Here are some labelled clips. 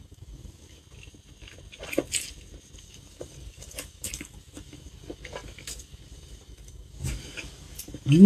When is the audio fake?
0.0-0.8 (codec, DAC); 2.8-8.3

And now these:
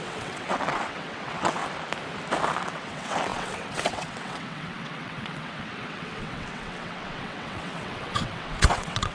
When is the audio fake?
0.0-1.6 (vocoder, WaveNeXt); 2.6-9.1

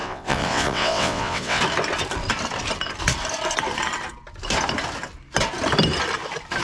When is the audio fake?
0.0-1.6 (vocoder, WaveNeXt)

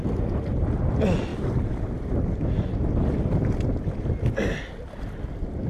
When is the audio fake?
none

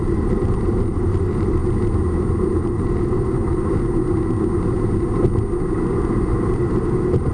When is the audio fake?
0.0-1.6 (vocoder, BigVGAN v2); 2.6-3.4; 6.6-7.3

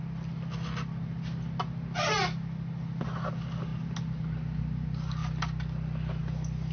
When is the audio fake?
none

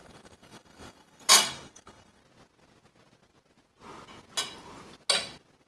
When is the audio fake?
0.0-2.2 (codec, DAC)